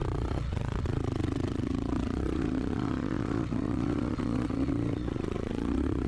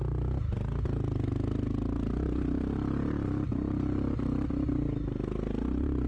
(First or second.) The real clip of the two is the second